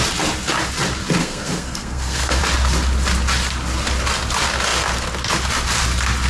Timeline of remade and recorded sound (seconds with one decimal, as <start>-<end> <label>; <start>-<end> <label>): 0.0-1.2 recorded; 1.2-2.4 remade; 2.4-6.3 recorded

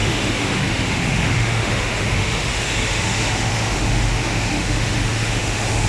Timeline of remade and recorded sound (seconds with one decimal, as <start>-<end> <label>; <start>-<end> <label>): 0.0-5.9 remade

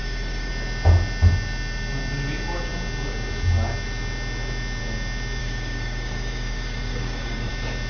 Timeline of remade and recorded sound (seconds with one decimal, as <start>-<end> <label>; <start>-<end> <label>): 0.0-0.5 remade; 0.5-5.4 recorded; 5.4-7.5 remade; 7.5-7.9 recorded

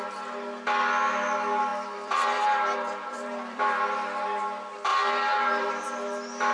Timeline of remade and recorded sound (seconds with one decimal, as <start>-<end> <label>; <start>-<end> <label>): 0.0-1.7 recorded; 1.7-4.2 remade; 4.2-4.9 recorded; 4.9-5.8 remade; 5.8-6.5 recorded

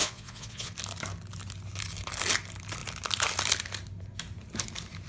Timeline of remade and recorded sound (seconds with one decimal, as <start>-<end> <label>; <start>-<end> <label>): 0.0-0.7 remade; 0.7-5.1 recorded

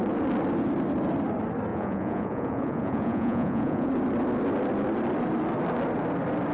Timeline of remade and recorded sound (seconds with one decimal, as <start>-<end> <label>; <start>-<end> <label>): 0.0-1.7 recorded; 1.7-3.9 remade; 3.9-6.5 recorded

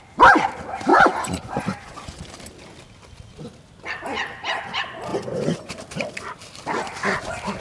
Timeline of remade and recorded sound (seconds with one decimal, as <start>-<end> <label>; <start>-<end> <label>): 0.0-0.9 recorded; 0.9-2.2 remade; 2.2-5.1 recorded; 5.1-5.8 remade; 5.8-7.6 recorded